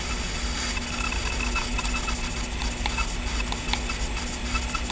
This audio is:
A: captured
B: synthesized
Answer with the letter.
A